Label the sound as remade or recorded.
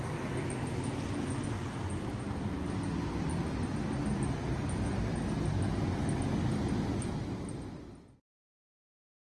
recorded